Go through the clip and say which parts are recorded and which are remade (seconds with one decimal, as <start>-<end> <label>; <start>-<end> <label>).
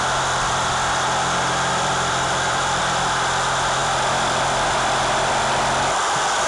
0.0-1.7 recorded; 1.7-2.8 remade; 2.8-3.8 recorded; 3.8-5.3 remade; 5.3-6.5 recorded